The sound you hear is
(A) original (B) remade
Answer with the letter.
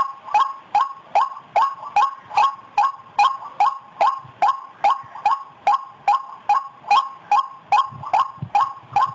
A